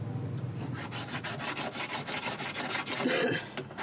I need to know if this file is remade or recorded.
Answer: recorded